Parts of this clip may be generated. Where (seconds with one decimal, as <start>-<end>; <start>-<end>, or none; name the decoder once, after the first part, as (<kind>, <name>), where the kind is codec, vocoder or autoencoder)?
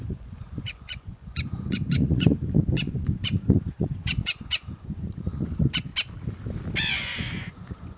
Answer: 0.0-5.9 (vocoder, Vocos); 6.9-8.0